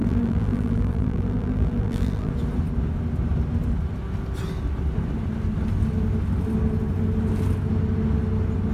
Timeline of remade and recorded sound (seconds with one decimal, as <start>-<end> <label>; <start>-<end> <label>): 0.0-2.3 remade; 2.3-8.7 recorded